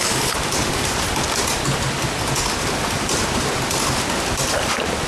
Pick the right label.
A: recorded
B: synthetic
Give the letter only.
A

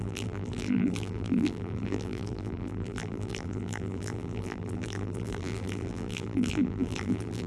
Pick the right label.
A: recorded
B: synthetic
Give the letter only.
B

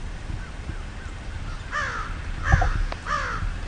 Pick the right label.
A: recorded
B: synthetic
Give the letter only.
A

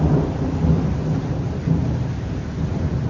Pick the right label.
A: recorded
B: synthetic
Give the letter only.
A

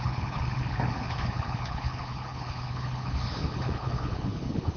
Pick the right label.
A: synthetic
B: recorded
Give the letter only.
A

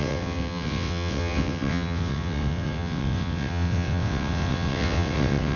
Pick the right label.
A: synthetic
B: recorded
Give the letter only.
A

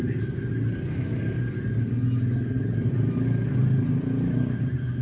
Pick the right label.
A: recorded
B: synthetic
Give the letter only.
A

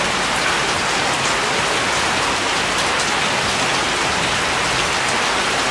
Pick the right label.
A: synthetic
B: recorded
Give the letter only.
B